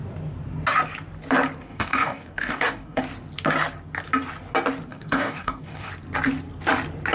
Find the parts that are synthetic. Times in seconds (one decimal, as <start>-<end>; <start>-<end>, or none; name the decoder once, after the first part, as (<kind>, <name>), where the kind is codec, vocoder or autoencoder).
1.7-3.0 (codec, DAC); 4.9-5.9